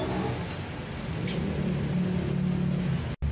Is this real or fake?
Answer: real